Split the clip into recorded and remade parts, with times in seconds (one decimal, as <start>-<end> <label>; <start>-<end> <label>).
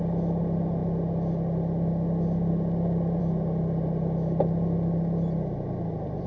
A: 0.0-6.3 recorded